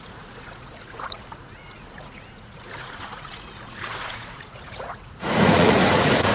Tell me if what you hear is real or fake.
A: fake